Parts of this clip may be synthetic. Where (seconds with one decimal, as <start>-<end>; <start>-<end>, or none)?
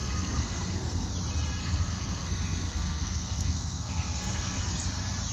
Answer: 0.0-1.1; 1.6-4.7